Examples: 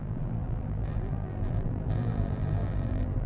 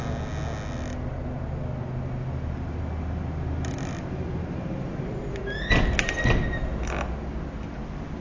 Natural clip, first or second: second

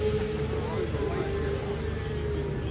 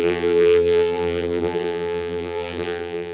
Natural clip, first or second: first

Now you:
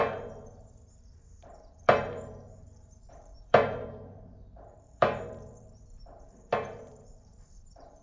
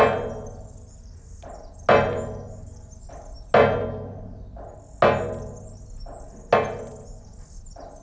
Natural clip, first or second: second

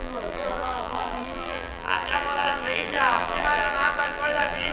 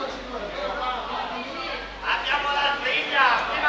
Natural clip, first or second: second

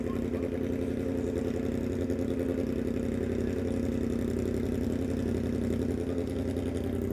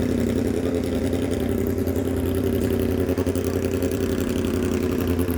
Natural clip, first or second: first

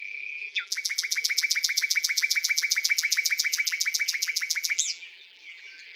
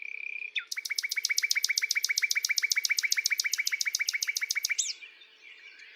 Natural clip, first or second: second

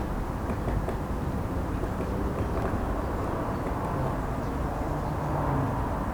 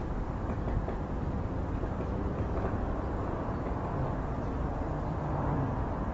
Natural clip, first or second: first